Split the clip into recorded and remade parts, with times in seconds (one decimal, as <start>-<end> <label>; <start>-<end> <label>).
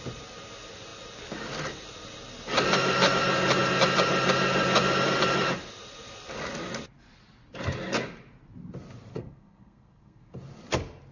0.0-9.1 recorded; 9.1-10.3 remade; 10.3-11.1 recorded